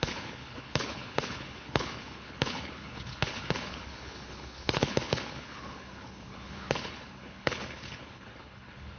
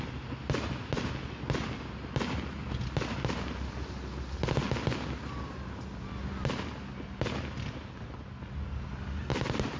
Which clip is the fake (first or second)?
first